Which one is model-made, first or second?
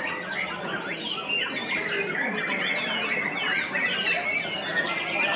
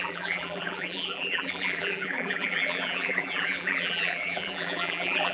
second